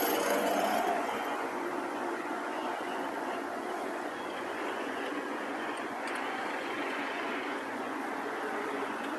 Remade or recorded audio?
remade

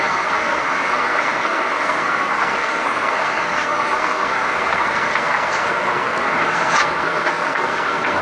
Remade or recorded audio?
remade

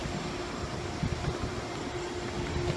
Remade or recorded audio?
recorded